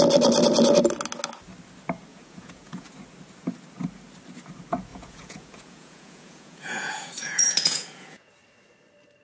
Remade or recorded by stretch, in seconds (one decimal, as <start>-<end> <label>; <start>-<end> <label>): 0.0-2.1 recorded; 2.1-2.9 remade; 2.9-4.9 recorded; 4.9-8.3 remade; 8.3-9.2 recorded